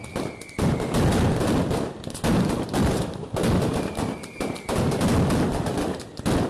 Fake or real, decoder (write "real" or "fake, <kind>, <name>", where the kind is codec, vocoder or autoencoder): real